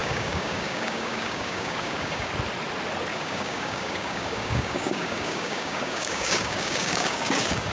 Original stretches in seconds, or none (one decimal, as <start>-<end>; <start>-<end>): 2.3-3.1